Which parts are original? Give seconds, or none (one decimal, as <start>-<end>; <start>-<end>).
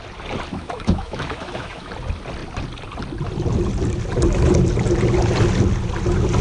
0.0-0.5; 1.9-6.4